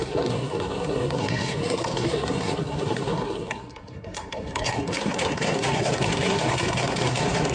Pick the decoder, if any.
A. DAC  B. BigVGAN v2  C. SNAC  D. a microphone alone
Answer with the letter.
C